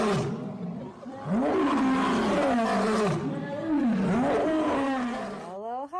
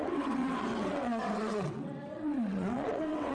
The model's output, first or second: second